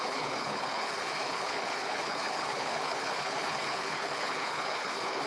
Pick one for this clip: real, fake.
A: fake